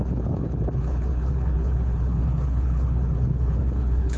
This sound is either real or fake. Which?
fake